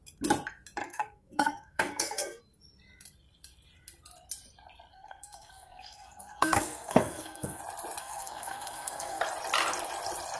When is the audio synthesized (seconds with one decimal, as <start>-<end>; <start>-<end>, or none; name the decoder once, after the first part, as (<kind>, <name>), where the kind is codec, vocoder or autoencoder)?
0.8-2.4 (codec, SNAC); 4.9-7.6; 8.0-9.2